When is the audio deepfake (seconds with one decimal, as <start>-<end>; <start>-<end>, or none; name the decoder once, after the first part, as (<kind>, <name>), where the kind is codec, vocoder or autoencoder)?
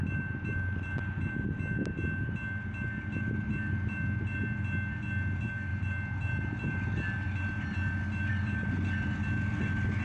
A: none